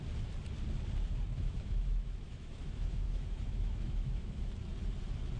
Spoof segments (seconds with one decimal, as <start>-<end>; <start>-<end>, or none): 1.3-4.5

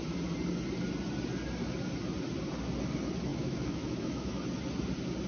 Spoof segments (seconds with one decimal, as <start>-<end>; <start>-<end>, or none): 3.3-4.4

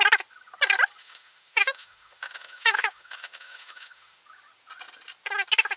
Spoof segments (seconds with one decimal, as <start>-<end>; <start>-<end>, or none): 1.0-4.2

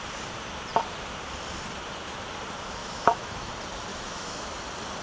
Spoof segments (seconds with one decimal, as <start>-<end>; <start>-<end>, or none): 2.8-3.5; 3.9-4.6

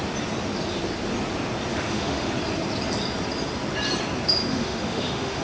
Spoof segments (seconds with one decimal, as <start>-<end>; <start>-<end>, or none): 1.7-2.3; 4.5-5.4

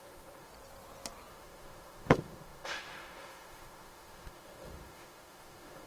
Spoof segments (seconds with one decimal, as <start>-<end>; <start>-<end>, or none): 0.0-0.5; 1.3-5.9

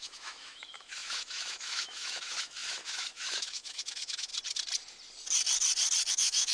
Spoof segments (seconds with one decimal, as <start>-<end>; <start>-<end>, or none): 0.0-4.3; 6.1-6.5

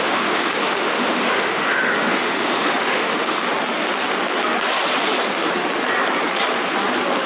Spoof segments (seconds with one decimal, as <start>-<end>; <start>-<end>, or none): 0.0-3.4